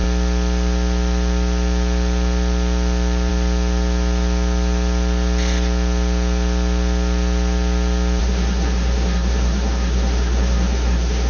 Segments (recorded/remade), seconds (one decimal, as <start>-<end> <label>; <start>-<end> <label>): 0.0-8.2 recorded; 8.2-11.3 remade